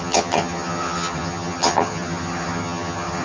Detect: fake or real fake